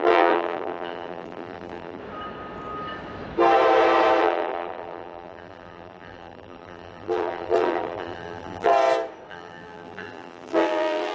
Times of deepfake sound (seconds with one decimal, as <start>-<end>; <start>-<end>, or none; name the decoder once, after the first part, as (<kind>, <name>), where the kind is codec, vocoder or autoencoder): 0.0-2.0 (vocoder, BigVGAN v2); 4.2-8.7; 9.3-11.1